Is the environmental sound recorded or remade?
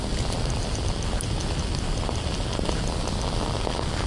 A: recorded